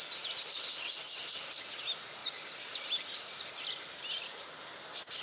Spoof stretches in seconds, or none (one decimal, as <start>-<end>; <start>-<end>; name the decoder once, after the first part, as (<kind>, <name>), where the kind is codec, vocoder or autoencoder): none